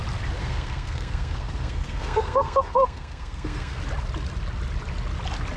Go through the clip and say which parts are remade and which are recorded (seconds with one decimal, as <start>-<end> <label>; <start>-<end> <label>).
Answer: 0.0-0.4 recorded; 0.4-3.8 remade; 3.8-5.6 recorded